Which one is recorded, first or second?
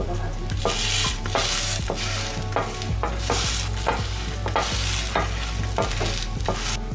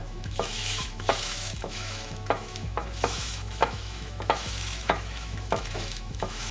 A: first